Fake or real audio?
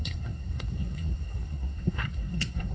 fake